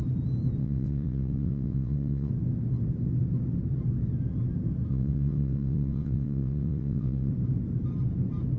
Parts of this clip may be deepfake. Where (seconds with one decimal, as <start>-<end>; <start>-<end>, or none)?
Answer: 0.6-2.3; 4.9-7.3